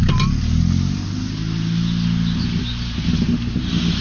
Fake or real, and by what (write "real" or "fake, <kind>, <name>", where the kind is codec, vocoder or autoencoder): real